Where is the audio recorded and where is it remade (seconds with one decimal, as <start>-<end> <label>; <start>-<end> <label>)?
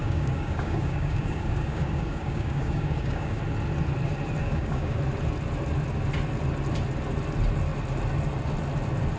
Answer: 0.0-3.4 remade; 3.4-4.4 recorded; 4.4-5.0 remade; 5.0-9.2 recorded